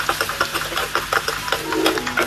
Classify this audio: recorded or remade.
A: recorded